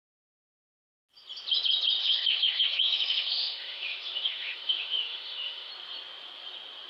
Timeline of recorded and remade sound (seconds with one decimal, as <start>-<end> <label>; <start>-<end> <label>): 0.0-2.0 recorded; 2.0-5.7 remade; 5.7-6.9 recorded